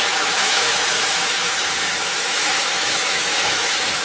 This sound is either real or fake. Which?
fake